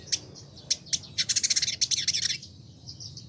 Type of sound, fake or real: real